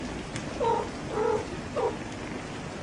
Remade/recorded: recorded